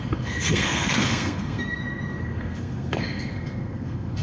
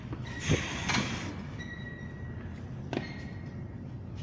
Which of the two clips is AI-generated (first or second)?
first